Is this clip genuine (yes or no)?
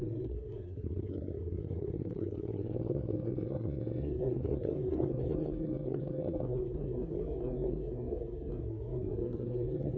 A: no